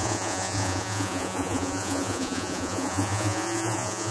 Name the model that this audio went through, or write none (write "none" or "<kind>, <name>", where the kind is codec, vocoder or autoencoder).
vocoder, Vocos